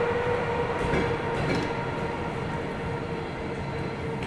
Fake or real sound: real